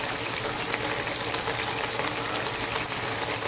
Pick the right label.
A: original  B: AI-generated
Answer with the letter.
A